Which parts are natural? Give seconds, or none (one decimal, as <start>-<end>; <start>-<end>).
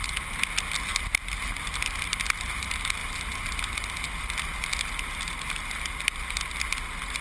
0.0-7.2